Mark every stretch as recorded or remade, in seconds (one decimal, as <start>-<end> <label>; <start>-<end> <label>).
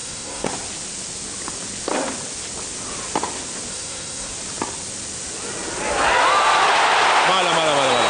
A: 0.0-0.5 remade; 0.5-3.7 recorded; 3.7-4.3 remade; 4.3-8.1 recorded